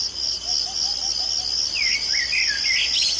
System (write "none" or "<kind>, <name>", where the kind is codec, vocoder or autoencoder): none